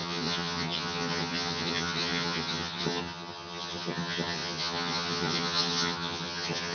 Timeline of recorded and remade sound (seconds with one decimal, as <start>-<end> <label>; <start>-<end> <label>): 0.0-6.7 remade